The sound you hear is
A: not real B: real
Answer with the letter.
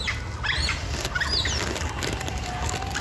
B